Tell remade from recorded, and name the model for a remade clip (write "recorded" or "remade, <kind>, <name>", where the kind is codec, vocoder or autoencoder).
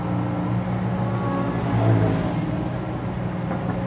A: recorded